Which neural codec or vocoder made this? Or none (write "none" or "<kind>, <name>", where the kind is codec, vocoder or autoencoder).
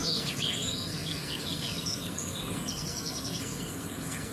codec, SNAC